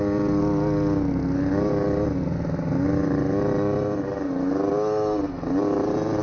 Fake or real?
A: real